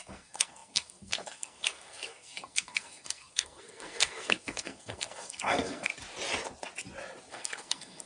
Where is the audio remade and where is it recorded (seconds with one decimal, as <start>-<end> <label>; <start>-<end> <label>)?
0.0-5.9 remade; 5.9-7.3 recorded; 7.3-8.1 remade